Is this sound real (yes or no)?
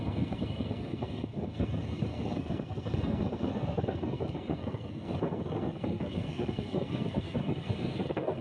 no